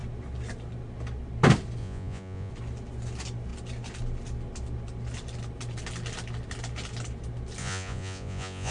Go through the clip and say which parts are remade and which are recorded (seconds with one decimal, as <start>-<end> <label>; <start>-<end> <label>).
0.0-1.8 recorded; 1.8-2.5 remade; 2.5-7.6 recorded; 7.6-8.7 remade